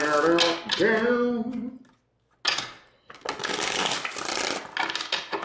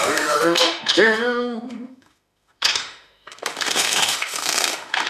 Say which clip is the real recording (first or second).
first